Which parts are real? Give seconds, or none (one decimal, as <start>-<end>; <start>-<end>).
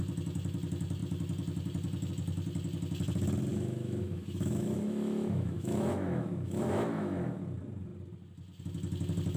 0.0-3.5; 7.4-9.4